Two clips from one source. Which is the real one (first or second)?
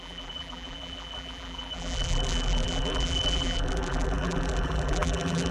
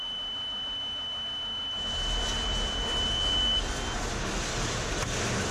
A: second